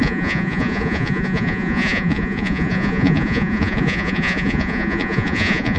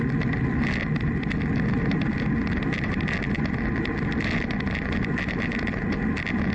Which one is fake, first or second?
first